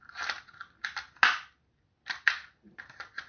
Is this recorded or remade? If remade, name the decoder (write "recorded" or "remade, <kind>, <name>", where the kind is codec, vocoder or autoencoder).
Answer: recorded